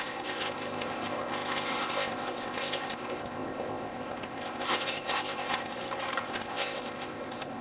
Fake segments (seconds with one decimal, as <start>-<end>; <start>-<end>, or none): 0.0-5.7; 6.2-7.6